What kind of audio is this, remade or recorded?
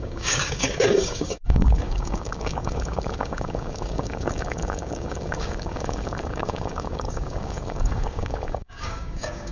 remade